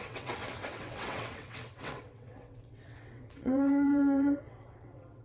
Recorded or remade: remade